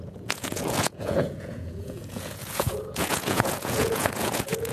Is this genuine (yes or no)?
no